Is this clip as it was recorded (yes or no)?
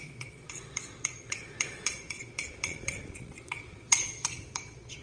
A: no